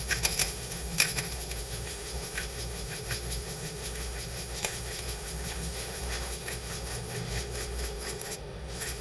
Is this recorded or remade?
remade